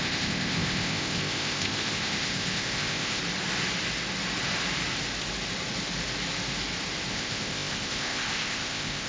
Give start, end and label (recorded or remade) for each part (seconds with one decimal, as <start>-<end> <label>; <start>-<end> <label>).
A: 0.0-3.2 remade; 3.2-7.1 recorded; 7.1-9.1 remade